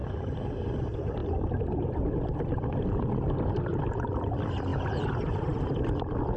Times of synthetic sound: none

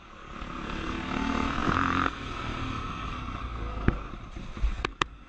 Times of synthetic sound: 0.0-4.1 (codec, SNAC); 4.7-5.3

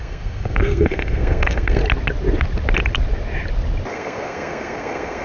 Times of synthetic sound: 0.0-1.8 (codec, SNAC); 3.9-5.2